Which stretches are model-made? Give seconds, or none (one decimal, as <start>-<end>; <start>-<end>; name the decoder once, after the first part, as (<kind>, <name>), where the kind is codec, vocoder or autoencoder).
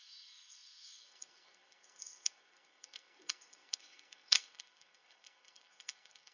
0.0-6.3 (codec, SNAC)